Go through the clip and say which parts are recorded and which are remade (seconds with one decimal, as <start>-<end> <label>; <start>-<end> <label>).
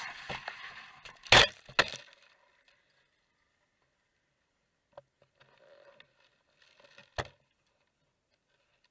0.0-8.9 recorded